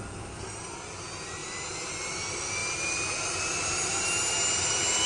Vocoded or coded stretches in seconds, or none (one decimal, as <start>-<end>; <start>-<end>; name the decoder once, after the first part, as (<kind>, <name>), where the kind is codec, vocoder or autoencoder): none